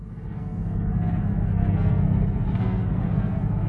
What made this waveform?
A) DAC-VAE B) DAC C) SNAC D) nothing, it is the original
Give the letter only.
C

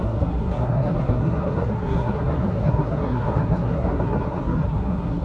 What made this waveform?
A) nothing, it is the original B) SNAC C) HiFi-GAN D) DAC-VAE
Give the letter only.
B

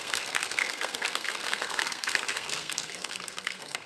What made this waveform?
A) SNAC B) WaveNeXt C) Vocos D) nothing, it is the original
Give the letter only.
A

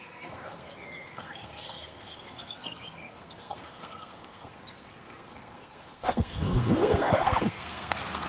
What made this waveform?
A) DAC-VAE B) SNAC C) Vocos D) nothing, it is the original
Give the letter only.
B